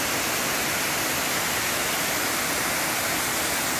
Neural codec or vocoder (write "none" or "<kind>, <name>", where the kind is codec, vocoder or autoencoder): none